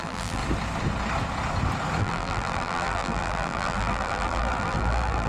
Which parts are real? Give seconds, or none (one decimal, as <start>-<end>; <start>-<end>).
0.4-2.0